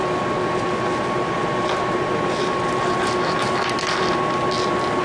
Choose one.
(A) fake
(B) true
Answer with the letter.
B